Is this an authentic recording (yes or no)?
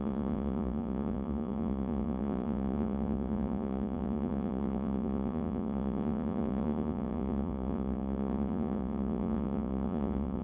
no